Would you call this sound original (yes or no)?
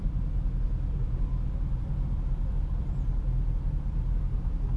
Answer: no